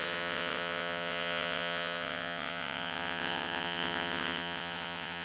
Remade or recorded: remade